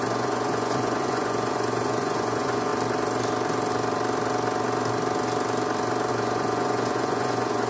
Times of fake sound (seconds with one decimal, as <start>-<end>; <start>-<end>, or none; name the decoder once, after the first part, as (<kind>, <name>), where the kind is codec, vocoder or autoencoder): 0.0-2.7 (vocoder, Vocos); 6.1-7.7